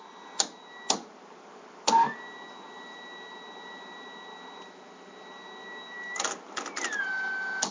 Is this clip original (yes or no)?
yes